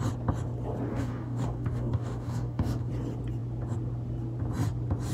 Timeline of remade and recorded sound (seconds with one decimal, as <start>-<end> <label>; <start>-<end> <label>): 0.0-0.9 recorded; 0.9-2.9 remade; 2.9-5.1 recorded